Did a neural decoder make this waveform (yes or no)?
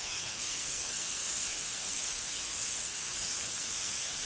yes